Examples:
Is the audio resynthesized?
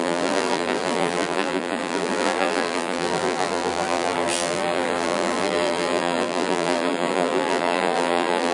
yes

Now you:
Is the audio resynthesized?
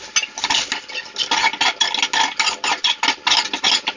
no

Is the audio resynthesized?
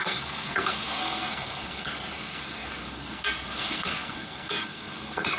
yes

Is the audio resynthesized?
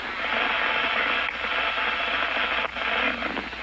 no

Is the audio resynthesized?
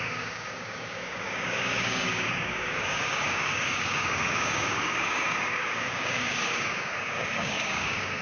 yes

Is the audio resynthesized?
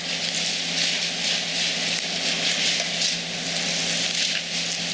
no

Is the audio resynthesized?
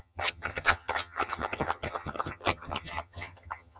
yes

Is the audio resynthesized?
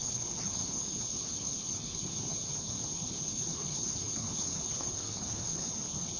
yes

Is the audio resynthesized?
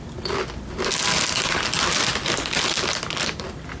no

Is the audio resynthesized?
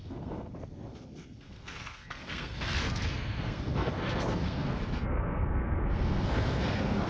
yes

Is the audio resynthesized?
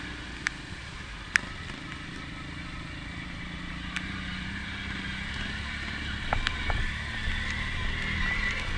no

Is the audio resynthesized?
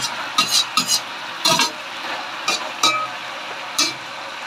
no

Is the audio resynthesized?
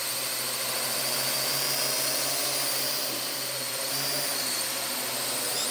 no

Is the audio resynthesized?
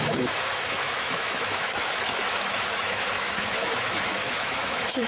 yes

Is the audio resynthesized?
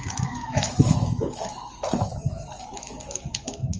yes